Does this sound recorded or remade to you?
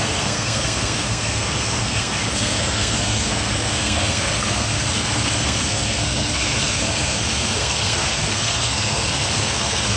remade